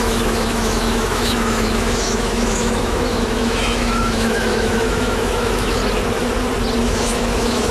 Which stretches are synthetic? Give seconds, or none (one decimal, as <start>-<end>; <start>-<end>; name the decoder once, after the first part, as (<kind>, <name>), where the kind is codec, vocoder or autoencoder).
0.0-5.8 (autoencoder, DAC-VAE); 6.8-7.7